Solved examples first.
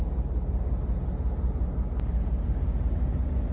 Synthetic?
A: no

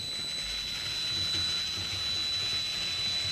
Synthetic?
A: no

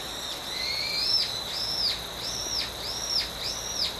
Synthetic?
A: no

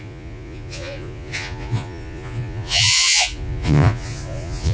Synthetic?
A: yes